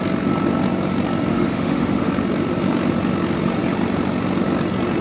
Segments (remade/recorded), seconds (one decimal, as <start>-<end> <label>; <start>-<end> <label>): 0.0-1.3 recorded; 1.3-2.1 remade; 2.1-5.0 recorded